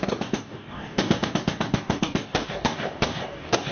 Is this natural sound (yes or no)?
no